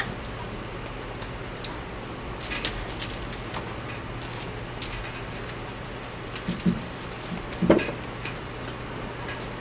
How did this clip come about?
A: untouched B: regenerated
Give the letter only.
A